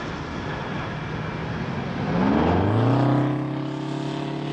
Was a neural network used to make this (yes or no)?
no